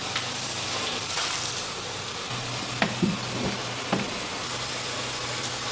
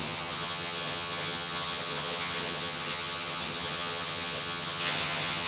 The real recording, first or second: first